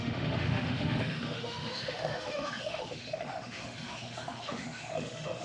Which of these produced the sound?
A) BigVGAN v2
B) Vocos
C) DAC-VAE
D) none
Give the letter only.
C